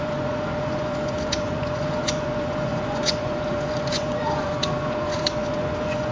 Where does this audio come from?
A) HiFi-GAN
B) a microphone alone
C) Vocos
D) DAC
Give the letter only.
C